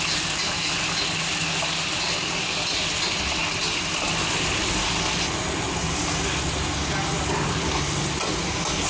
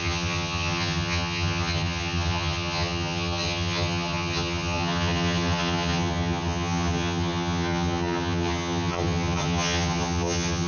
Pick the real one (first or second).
first